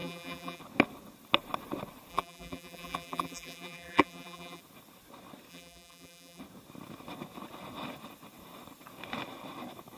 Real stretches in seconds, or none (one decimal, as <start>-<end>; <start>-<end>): 0.6-2.1; 4.6-5.5; 6.4-10.0

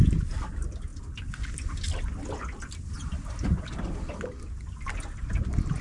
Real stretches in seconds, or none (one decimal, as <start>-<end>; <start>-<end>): 0.0-5.8

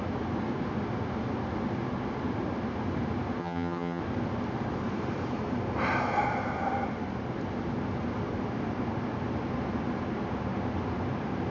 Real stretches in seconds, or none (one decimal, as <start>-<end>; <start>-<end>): 0.0-3.4; 4.0-11.5

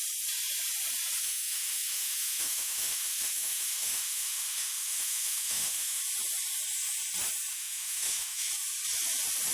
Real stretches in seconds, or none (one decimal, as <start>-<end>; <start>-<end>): 0.0-1.2; 6.0-7.5; 8.5-9.5

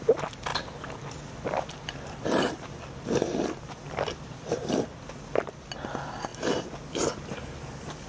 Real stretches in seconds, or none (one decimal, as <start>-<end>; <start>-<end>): 0.0-8.1